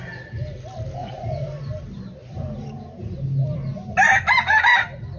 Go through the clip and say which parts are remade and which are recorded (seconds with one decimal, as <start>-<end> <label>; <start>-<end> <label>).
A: 0.0-1.0 recorded; 1.0-1.6 remade; 1.6-2.2 recorded; 2.2-3.2 remade; 3.2-5.2 recorded